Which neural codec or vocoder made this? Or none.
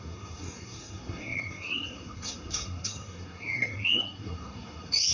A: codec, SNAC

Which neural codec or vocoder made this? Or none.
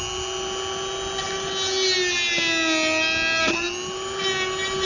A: none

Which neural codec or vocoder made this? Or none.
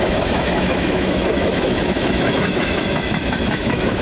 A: autoencoder, DAC-VAE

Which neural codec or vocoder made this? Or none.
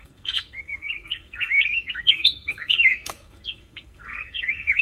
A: codec, SNAC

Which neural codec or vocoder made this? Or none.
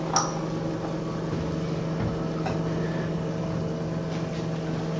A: none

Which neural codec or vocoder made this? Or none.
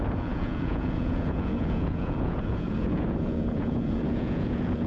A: vocoder, Vocos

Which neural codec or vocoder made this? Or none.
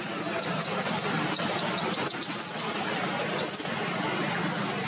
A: none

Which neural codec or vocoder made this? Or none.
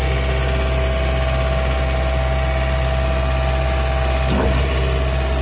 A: none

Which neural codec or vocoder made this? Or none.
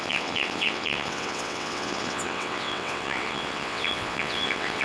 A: vocoder, WaveNeXt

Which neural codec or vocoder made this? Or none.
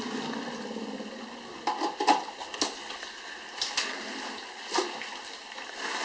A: none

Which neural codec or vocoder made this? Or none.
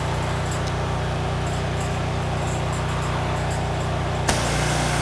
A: none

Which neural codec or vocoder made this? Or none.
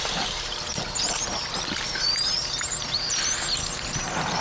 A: vocoder, BigVGAN v2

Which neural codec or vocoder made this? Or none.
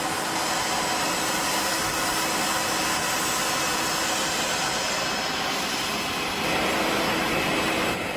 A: none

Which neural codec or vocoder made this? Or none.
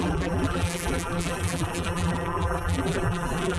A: vocoder, BigVGAN v2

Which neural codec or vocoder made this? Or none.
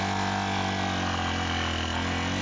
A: none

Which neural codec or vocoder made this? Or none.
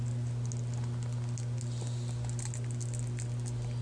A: none